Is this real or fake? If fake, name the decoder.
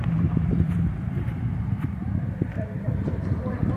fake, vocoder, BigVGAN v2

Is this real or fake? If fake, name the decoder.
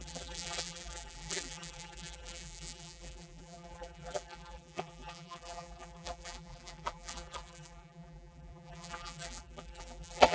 fake, vocoder, BigVGAN v2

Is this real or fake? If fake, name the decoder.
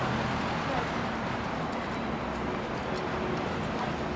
real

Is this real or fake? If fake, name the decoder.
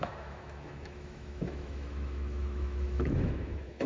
fake, autoencoder, DAC-VAE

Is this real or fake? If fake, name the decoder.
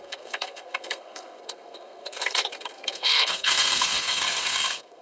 fake, codec, SNAC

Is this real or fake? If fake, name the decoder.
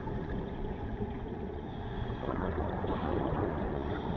fake, vocoder, Vocos